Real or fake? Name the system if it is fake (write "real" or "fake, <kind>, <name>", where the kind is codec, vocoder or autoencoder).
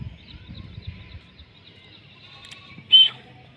real